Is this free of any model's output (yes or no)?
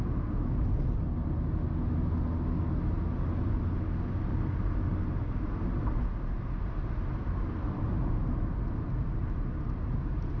yes